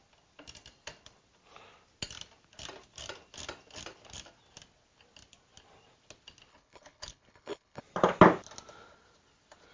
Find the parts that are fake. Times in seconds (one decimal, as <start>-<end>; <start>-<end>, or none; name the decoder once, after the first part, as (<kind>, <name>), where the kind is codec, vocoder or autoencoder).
6.5-7.8 (codec, HILCodec)